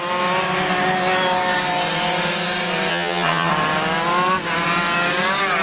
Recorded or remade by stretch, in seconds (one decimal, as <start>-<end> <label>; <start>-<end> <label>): 0.0-2.9 recorded; 2.9-3.5 remade; 3.5-5.6 recorded